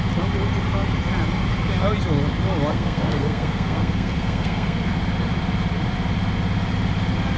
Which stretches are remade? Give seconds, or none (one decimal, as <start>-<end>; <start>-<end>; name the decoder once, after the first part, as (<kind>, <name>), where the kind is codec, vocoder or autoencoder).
2.7-4.9 (codec, SNAC)